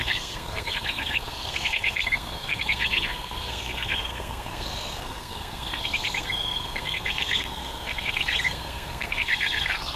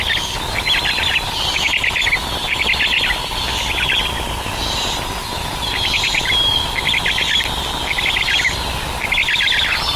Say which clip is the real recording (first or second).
second